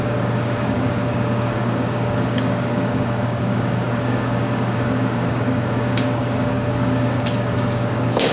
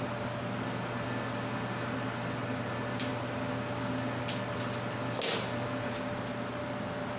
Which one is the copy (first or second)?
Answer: first